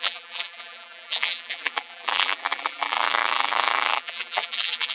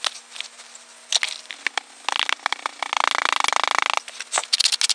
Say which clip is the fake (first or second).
first